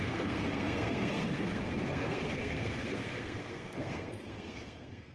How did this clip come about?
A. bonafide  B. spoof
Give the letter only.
B